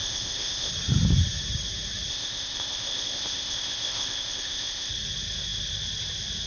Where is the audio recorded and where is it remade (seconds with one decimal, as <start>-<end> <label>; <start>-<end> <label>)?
0.0-0.7 remade; 0.7-2.1 recorded; 2.1-4.9 remade; 4.9-6.5 recorded